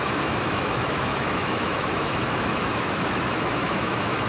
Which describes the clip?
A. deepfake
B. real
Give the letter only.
A